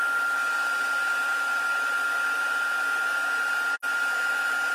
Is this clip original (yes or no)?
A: yes